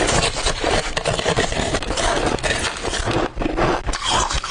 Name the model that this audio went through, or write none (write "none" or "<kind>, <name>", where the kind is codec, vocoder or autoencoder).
none